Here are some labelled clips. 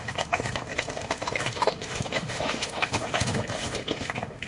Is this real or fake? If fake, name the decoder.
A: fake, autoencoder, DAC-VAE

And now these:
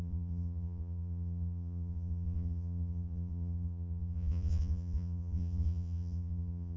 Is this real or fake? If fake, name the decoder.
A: fake, vocoder, Vocos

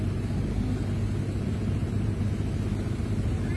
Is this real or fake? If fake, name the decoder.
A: real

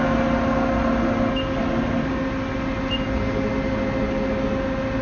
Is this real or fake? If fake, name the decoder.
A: real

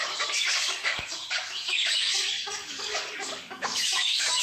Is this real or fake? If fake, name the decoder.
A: fake, codec, DAC